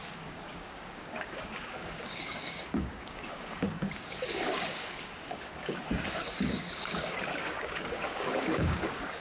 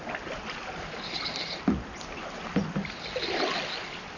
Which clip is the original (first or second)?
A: second